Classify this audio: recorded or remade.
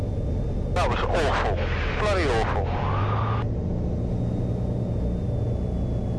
recorded